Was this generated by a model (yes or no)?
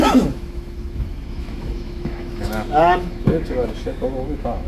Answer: yes